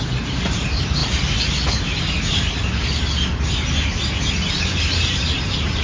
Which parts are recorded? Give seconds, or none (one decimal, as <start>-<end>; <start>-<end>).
1.0-4.5